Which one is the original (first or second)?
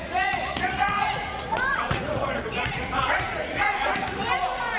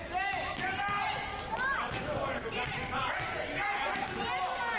second